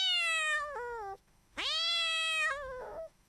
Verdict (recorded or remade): remade